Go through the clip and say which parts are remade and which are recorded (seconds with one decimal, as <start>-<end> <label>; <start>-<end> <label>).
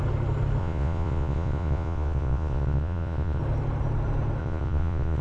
0.0-0.6 recorded; 0.6-3.4 remade; 3.4-4.4 recorded; 4.4-5.2 remade